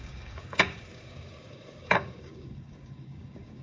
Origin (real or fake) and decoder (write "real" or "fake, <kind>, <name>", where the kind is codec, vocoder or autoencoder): fake, codec, DAC